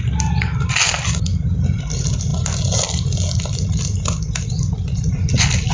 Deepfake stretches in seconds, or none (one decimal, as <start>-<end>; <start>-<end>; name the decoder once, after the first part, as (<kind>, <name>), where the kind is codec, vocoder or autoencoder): 2.3-5.7 (vocoder, BigVGAN v2)